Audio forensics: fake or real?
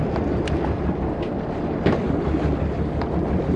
real